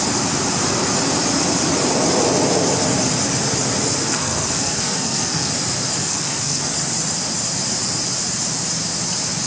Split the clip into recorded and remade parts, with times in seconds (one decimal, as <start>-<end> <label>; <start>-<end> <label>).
0.0-4.0 recorded; 4.0-5.5 remade; 5.5-6.0 recorded; 6.0-6.6 remade; 6.6-9.5 recorded